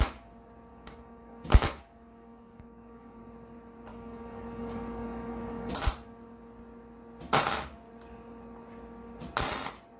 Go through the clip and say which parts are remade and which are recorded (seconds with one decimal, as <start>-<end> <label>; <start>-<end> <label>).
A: 0.0-0.7 recorded; 0.7-3.2 remade; 3.2-3.9 recorded; 3.9-5.7 remade; 5.7-10.0 recorded